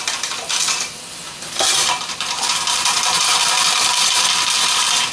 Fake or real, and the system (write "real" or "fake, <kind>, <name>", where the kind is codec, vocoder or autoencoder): fake, vocoder, BigVGAN v2